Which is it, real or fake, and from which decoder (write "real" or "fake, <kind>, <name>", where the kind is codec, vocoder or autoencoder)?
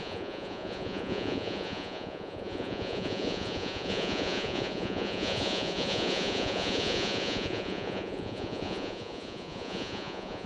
fake, vocoder, Vocos